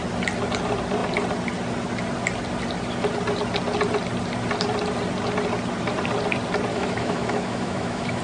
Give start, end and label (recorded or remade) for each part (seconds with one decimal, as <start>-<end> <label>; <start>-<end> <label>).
0.0-6.7 recorded; 6.7-8.2 remade